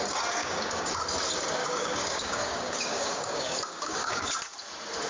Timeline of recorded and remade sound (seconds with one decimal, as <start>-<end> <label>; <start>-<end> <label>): 0.0-0.4 recorded; 0.4-0.9 remade; 0.9-1.6 recorded; 1.6-4.3 remade; 4.3-5.1 recorded